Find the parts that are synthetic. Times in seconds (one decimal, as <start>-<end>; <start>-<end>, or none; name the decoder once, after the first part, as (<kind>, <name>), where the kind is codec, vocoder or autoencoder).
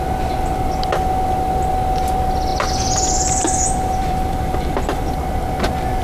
2.5-5.1 (vocoder, BigVGAN v2)